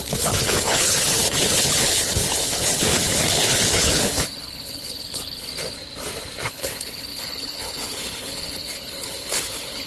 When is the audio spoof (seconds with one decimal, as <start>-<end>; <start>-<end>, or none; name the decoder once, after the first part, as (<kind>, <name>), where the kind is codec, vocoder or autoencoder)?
0.0-5.5 (codec, HILCodec); 6.5-9.9